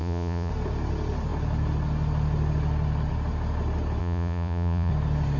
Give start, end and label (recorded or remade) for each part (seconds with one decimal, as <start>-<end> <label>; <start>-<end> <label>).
0.0-0.5 remade; 0.5-4.0 recorded; 4.0-4.9 remade; 4.9-5.4 recorded